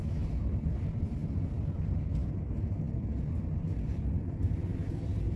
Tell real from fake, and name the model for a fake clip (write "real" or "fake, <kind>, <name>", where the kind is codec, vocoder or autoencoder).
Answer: real